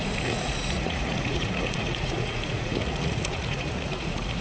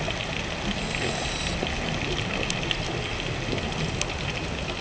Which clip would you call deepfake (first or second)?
first